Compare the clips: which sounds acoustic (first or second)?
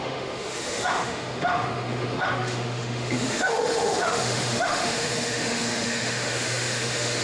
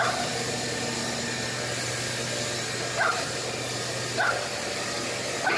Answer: second